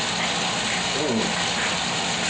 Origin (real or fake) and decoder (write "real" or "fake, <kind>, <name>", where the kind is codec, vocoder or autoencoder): real